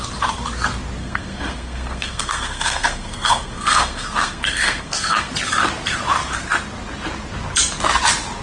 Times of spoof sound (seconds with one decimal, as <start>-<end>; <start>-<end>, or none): 1.0-5.3